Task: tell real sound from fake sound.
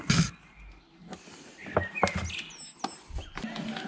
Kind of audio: real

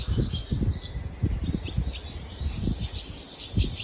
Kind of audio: real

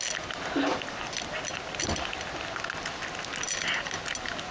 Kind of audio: real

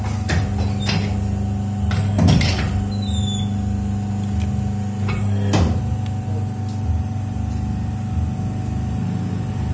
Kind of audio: real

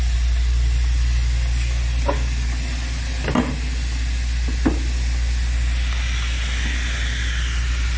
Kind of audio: real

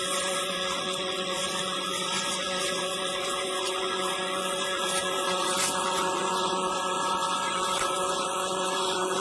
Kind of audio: fake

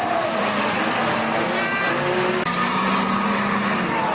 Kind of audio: real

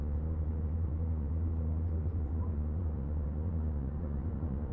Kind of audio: fake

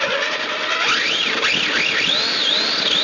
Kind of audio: real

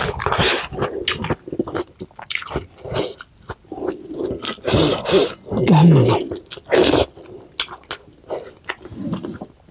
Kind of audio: real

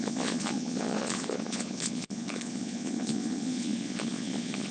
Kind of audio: fake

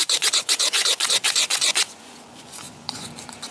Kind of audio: fake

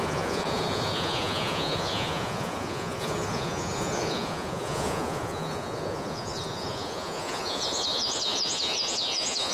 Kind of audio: fake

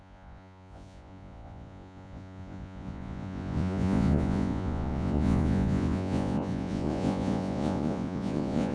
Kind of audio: fake